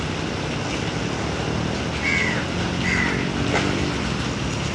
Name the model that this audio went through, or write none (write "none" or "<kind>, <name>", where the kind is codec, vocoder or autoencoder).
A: none